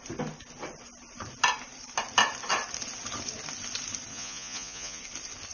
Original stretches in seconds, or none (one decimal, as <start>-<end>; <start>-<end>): 0.0-4.1; 5.0-5.5